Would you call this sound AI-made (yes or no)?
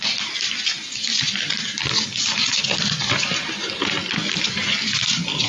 no